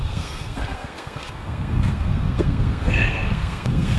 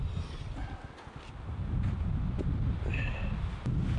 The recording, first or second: second